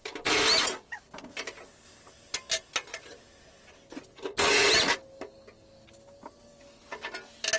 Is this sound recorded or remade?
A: recorded